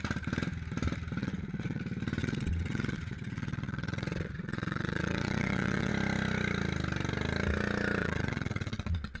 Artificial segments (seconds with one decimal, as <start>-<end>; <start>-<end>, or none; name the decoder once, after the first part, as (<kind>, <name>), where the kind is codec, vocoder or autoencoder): 1.2-1.8 (vocoder, WaveNeXt); 2.2-5.9; 8.0-9.2